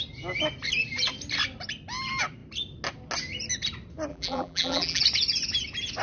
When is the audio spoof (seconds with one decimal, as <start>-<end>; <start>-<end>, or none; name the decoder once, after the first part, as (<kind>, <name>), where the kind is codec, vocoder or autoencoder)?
4.1-5.0 (vocoder, BigVGAN v2)

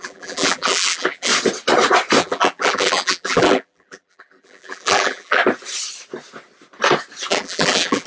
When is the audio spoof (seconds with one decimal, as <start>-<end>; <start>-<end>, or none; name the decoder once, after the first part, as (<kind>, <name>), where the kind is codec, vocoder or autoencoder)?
0.0-1.3 (vocoder, BigVGAN v2); 2.2-5.4; 7.3-8.1

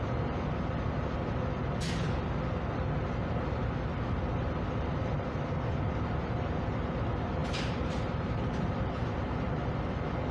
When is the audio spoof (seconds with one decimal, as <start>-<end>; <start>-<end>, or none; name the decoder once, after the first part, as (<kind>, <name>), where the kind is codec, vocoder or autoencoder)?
7.4-9.5 (vocoder, BigVGAN v2)